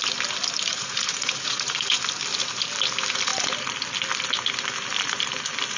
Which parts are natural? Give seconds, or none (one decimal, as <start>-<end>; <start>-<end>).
0.0-0.7; 2.0-5.8